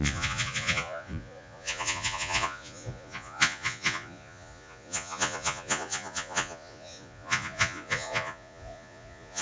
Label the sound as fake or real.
fake